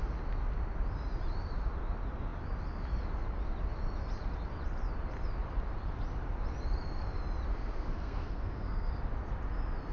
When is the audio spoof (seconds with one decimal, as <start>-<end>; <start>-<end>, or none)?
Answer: 7.5-8.9